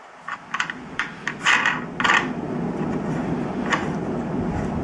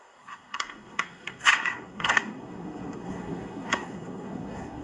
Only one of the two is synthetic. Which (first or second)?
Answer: second